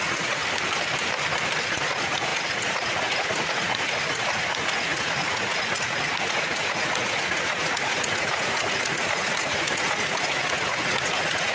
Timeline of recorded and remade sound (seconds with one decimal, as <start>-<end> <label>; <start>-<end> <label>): 0.0-0.4 remade; 0.4-1.6 recorded; 1.6-11.5 remade

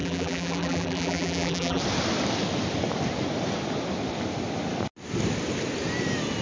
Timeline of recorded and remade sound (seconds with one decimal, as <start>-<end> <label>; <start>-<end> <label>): 0.0-1.8 remade; 1.8-6.4 recorded

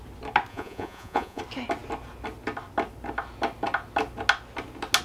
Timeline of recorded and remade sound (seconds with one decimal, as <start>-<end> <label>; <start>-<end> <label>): 0.0-0.5 recorded; 0.5-1.4 remade; 1.4-5.0 recorded

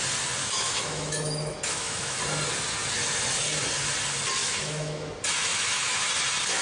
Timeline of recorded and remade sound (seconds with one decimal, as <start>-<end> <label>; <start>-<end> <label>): 0.0-0.4 recorded; 0.4-2.2 remade; 2.2-4.4 recorded; 4.4-5.1 remade; 5.1-5.5 recorded; 5.5-6.1 remade; 6.1-6.6 recorded